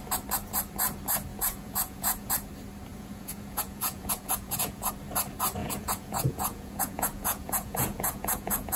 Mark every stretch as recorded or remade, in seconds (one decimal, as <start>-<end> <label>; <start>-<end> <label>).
0.0-1.3 recorded; 1.3-2.3 remade; 2.3-2.9 recorded; 2.9-4.9 remade; 4.9-5.6 recorded; 5.6-8.8 remade